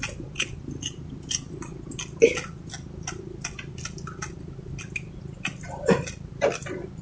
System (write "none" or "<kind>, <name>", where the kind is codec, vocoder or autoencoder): none